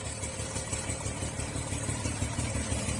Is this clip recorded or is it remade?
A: recorded